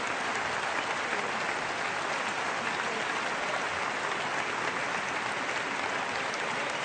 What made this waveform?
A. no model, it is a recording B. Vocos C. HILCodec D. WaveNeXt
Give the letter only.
A